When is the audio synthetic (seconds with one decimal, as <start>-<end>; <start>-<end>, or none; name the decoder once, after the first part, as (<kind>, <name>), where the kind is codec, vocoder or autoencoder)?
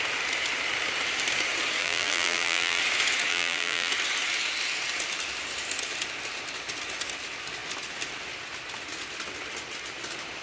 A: 1.8-2.8 (vocoder, BigVGAN v2); 3.3-3.9